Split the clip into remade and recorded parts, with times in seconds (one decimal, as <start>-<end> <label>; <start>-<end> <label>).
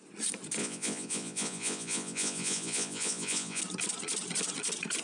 0.0-0.6 recorded; 0.6-3.6 remade; 3.6-5.0 recorded